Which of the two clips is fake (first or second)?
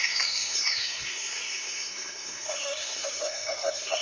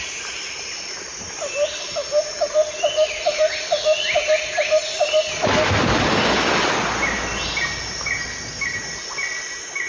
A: first